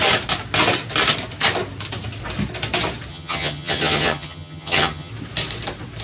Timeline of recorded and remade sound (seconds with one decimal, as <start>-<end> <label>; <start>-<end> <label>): 0.0-3.1 recorded; 3.1-5.1 remade; 5.1-6.0 recorded